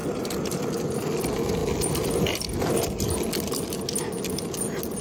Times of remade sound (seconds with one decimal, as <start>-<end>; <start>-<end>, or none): 0.0-0.6